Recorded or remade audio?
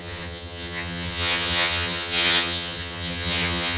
remade